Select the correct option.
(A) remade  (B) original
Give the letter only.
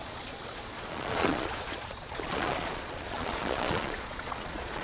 A